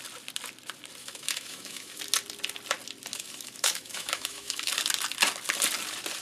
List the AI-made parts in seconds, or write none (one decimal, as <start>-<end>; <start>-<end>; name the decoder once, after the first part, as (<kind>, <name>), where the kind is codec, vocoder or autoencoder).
1.0-2.0 (autoencoder, DAC-VAE); 3.1-4.7